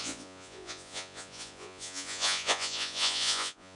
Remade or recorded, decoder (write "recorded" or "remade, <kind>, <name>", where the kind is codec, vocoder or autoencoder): remade, vocoder, Vocos